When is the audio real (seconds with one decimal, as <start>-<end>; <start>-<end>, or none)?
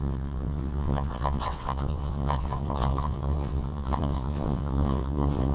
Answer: none